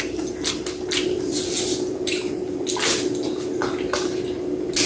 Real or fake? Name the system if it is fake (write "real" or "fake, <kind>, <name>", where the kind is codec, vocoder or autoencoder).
real